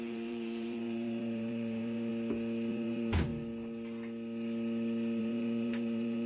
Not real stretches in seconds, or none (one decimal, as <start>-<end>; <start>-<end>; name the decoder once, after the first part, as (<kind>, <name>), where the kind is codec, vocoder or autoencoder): 0.0-2.1 (vocoder, BigVGAN v2); 2.7-3.3; 5.2-6.3